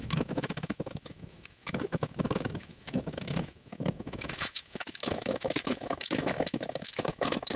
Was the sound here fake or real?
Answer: fake